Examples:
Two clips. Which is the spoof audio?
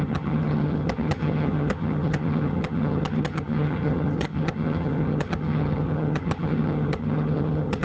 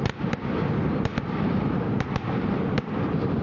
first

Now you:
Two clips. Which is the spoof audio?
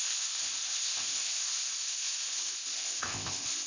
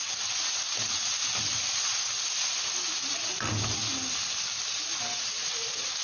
first